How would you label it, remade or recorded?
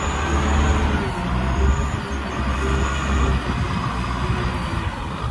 recorded